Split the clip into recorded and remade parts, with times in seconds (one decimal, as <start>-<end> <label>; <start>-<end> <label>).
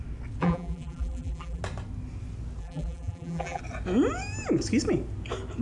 0.0-0.4 recorded; 0.4-1.6 remade; 1.6-2.6 recorded; 2.6-3.6 remade; 3.6-5.6 recorded